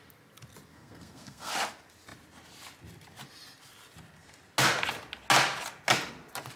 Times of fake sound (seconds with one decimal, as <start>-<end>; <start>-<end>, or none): 0.7-1.5